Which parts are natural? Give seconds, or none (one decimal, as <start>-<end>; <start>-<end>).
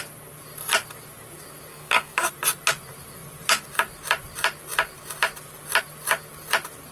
0.0-1.7; 2.3-6.9